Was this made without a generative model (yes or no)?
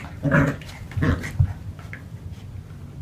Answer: yes